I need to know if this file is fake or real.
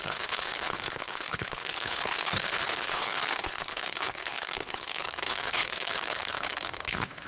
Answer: fake